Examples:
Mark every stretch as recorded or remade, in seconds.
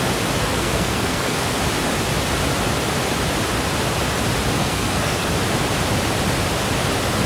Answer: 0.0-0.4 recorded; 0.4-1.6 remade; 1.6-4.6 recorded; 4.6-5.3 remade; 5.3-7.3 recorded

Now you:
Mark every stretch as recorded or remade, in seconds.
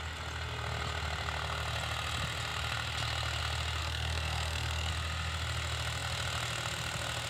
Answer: 0.0-3.8 recorded; 3.8-4.9 remade; 4.9-7.3 recorded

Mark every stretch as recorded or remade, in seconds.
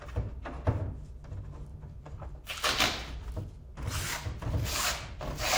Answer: 0.0-5.6 recorded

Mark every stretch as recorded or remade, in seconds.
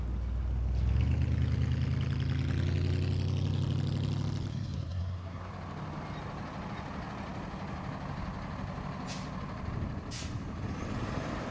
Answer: 0.0-4.5 recorded; 4.5-5.5 remade; 5.5-11.5 recorded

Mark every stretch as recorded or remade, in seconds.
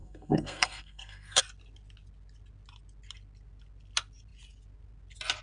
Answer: 0.0-1.4 remade; 1.4-5.4 recorded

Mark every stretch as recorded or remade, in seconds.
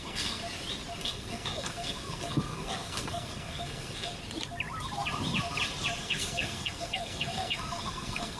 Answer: 0.0-0.4 remade; 0.4-1.0 recorded; 1.0-4.1 remade; 4.1-6.0 recorded; 6.0-8.4 remade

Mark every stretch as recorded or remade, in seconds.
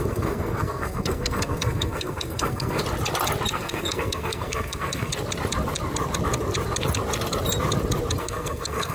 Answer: 0.0-2.8 remade; 2.8-3.5 recorded; 3.5-5.1 remade; 5.1-8.2 recorded; 8.2-8.9 remade